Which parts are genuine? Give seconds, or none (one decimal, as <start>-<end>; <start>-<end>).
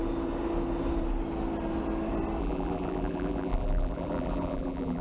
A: 0.0-2.4